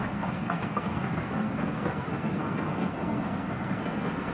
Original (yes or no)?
no